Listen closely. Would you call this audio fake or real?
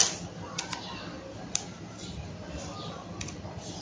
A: real